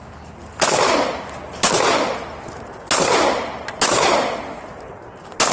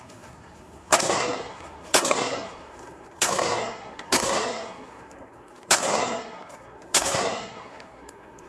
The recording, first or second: first